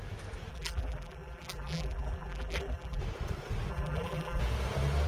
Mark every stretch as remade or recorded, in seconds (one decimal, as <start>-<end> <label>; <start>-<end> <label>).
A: 0.0-0.5 recorded; 0.5-3.0 remade; 3.0-3.7 recorded; 3.7-4.4 remade; 4.4-5.1 recorded